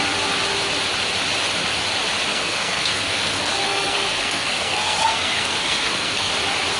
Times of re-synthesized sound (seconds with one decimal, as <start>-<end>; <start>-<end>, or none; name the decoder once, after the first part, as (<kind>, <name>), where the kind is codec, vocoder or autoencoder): 2.3-6.3 (codec, SNAC)